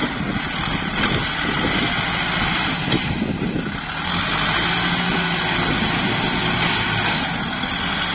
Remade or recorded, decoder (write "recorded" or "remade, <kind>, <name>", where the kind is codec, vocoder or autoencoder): recorded